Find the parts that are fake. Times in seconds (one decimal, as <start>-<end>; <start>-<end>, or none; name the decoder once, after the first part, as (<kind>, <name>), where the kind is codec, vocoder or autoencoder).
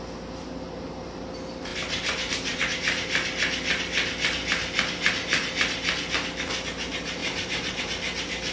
1.7-2.6 (vocoder, BigVGAN v2); 7.2-7.8